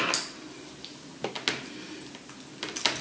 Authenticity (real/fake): real